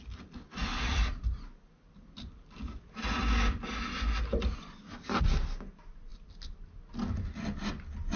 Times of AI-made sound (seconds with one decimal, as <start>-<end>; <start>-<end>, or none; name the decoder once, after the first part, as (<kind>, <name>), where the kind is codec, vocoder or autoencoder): none